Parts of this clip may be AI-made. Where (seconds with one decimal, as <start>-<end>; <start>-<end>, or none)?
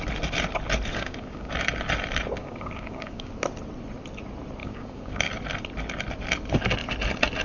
0.9-1.5; 2.4-3.3; 4.6-5.3